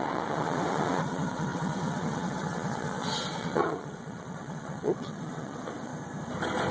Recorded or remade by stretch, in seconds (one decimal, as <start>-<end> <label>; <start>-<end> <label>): 0.0-5.9 remade; 5.9-6.7 recorded